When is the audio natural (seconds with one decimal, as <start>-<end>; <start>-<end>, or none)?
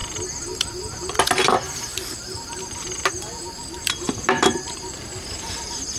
none